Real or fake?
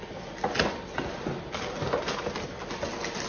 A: real